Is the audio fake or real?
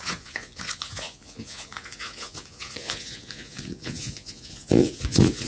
fake